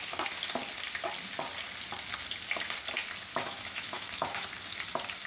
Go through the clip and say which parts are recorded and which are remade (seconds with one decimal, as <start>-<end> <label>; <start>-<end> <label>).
0.0-3.3 recorded; 3.3-4.5 remade; 4.5-5.3 recorded